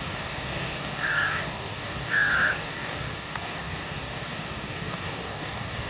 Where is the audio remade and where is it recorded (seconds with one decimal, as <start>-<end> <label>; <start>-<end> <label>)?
0.0-5.9 remade